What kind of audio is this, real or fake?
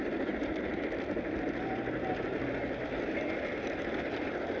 real